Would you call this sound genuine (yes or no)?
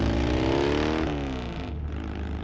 yes